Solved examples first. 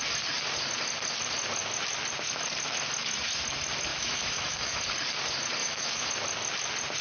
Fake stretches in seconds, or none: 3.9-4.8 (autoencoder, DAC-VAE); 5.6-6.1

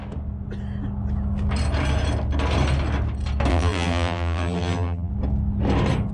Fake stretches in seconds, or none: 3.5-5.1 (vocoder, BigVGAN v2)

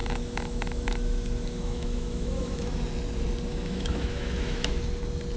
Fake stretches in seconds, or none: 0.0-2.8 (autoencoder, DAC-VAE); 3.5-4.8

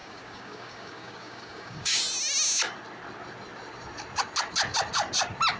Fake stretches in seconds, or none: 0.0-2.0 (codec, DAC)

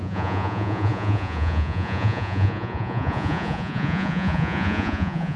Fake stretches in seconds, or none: 0.0-5.4 (vocoder, Vocos)

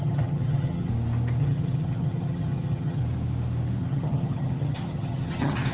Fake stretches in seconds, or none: 0.0-0.9 (vocoder, HiFi-GAN); 1.4-3.0; 3.8-5.7